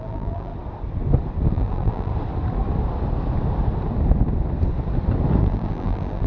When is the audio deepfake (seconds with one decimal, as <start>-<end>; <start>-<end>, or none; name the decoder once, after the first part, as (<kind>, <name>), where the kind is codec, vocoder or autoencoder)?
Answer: 0.0-0.5 (vocoder, BigVGAN v2); 1.5-2.1; 5.4-6.3